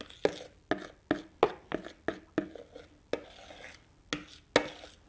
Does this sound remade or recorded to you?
recorded